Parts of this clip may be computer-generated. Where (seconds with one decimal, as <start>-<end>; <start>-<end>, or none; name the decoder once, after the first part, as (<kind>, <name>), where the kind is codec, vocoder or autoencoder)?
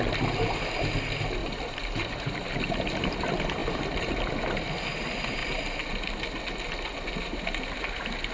1.4-2.5 (vocoder, BigVGAN v2); 3.6-4.3